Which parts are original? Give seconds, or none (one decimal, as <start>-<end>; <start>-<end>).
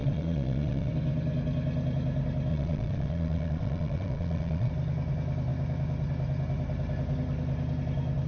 0.9-2.5; 4.7-8.3